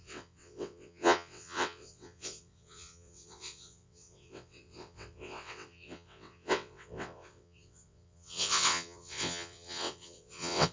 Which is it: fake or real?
fake